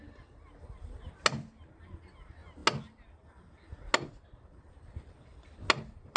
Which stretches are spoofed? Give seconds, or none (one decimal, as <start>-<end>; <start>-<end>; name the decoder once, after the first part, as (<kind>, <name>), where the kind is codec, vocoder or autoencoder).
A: none